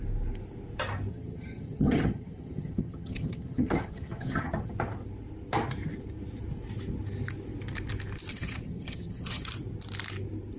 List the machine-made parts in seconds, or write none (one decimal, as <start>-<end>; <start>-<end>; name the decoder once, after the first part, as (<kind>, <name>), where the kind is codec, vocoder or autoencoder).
1.1-4.7 (vocoder, HiFi-GAN); 8.3-9.5